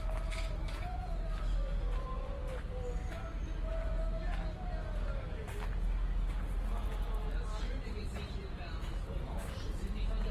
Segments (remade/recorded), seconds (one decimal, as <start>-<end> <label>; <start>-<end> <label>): 0.0-0.6 recorded; 0.6-1.4 remade; 1.4-10.3 recorded